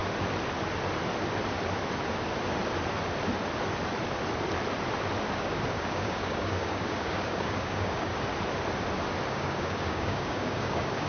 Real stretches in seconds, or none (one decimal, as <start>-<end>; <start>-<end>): 0.0-5.3; 8.1-9.3